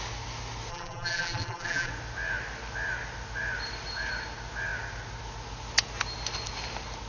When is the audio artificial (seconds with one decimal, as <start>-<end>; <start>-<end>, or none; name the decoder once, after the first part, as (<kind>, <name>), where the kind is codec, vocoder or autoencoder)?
0.7-1.9 (vocoder, BigVGAN v2)